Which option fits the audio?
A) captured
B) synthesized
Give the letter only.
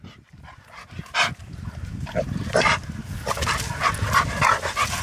A